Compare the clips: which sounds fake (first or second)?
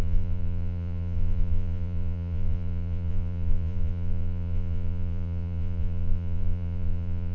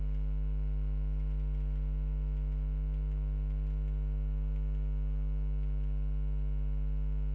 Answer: first